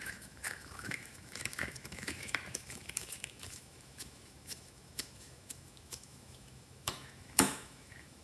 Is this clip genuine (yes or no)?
no